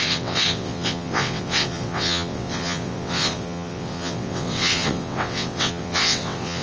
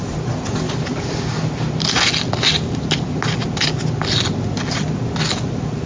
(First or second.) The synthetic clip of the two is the first